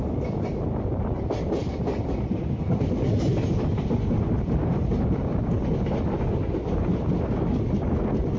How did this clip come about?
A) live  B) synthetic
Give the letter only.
A